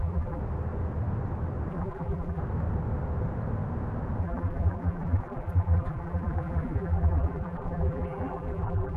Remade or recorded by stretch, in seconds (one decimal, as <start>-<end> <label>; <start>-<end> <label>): 0.0-0.4 remade; 0.4-1.7 recorded; 1.7-2.4 remade; 2.4-4.2 recorded; 4.2-9.0 remade